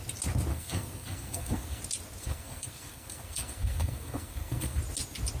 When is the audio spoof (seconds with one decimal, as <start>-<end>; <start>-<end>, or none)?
0.5-1.8; 2.2-4.8